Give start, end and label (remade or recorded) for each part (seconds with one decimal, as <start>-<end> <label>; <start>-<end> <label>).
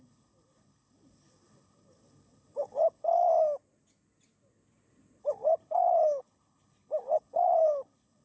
0.0-3.3 remade; 3.3-5.2 recorded; 5.2-8.2 remade